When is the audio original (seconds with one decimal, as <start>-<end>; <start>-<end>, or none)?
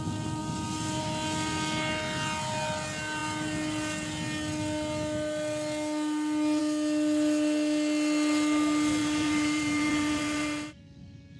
0.0-9.0; 10.8-11.4